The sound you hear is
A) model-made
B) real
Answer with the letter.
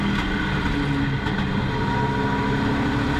B